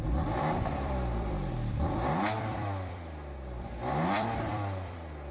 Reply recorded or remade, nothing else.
remade